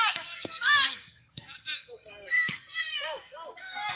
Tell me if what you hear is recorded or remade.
remade